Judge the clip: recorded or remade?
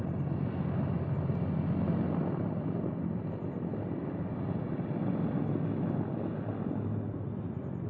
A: recorded